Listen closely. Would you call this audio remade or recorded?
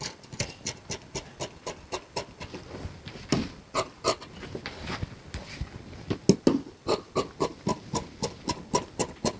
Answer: recorded